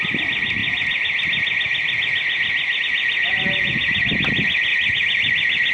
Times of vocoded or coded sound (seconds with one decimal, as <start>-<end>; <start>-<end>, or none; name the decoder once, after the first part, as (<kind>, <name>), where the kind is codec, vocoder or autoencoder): none